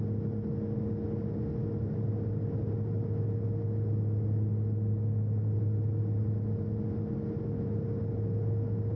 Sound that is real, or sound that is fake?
real